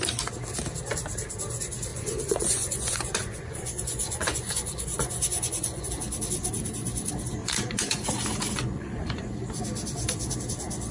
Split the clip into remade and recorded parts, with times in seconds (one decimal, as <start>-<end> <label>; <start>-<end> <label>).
0.0-1.9 recorded; 1.9-5.9 remade; 5.9-7.4 recorded; 7.4-9.3 remade; 9.3-10.9 recorded